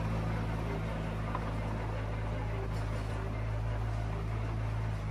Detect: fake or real real